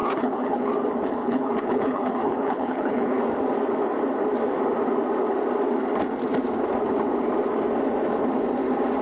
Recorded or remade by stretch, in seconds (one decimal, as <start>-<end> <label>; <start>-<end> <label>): 0.0-0.7 remade; 0.7-1.2 recorded; 1.2-3.2 remade; 3.2-9.0 recorded